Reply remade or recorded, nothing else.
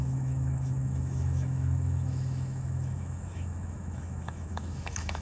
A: remade